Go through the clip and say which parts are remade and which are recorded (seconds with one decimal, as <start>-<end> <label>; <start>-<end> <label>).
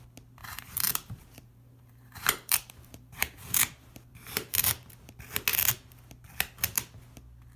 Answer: 0.0-0.4 recorded; 0.4-4.9 remade; 4.9-7.6 recorded